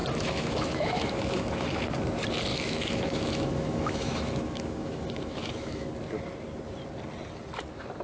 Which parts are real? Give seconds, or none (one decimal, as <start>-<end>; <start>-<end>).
1.8-2.5; 5.9-8.0